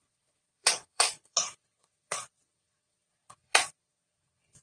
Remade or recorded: remade